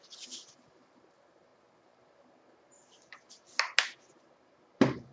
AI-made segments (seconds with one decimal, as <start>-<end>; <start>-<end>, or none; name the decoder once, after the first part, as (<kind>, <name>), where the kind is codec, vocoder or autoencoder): none